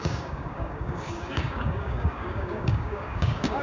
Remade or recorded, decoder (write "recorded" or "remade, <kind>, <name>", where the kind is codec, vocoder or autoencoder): remade, codec, DAC